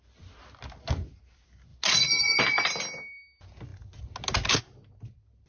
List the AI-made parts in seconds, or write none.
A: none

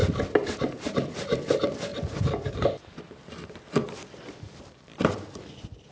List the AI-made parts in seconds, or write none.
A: 0.0-5.9 (vocoder, BigVGAN v2)

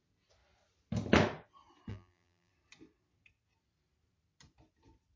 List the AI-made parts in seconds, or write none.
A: 1.9-2.5 (vocoder, BigVGAN v2)